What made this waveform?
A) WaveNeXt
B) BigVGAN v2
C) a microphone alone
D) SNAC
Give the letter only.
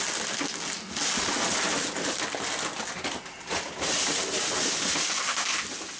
C